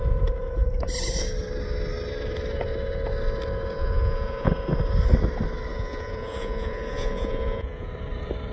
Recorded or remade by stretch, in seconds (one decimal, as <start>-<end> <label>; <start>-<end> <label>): 0.0-3.8 recorded; 3.8-4.5 remade; 4.5-5.7 recorded; 5.7-7.9 remade; 7.9-8.5 recorded